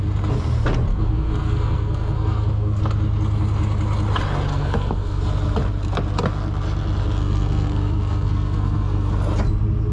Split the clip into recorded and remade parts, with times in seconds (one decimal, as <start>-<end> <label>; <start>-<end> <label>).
0.0-0.9 recorded; 0.9-2.8 remade; 2.8-4.5 recorded; 4.5-5.2 remade; 5.2-7.2 recorded; 7.2-9.1 remade; 9.1-9.9 recorded